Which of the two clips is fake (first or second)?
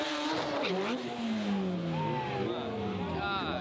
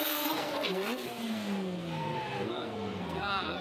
second